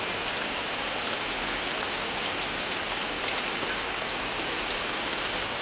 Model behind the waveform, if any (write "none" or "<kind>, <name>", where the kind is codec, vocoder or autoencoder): none